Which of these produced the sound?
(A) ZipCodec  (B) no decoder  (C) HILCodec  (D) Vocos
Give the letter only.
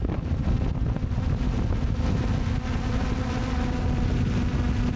B